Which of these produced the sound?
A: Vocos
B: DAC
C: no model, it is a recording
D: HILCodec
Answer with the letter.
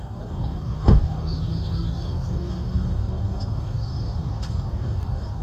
B